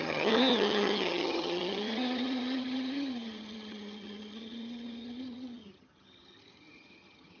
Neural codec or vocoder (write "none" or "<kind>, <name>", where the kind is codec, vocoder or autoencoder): vocoder, HiFi-GAN